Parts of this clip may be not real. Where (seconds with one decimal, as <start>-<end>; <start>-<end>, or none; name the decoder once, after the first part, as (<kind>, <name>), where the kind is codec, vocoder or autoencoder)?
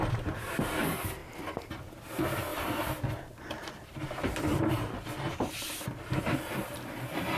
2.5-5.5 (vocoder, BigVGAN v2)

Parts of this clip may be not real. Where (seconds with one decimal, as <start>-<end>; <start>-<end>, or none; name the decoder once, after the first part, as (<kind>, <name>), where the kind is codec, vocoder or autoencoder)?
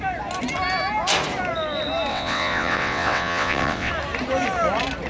2.1-3.9 (vocoder, WaveNeXt)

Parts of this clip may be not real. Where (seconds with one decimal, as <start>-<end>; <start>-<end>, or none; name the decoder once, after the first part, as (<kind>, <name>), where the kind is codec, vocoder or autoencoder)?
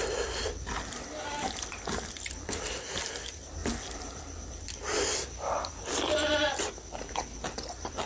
none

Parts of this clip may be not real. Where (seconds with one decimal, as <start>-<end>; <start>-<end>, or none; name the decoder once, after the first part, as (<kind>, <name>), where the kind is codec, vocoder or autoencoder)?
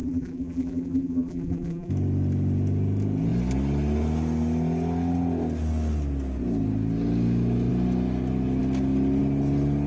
0.0-1.9 (vocoder, BigVGAN v2)